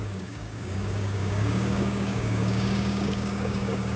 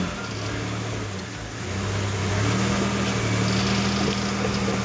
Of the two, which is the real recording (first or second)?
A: second